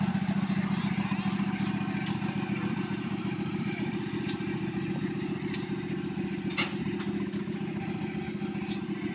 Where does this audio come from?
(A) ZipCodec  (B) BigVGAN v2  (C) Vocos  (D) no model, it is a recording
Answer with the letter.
D